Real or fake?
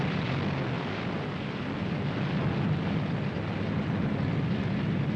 real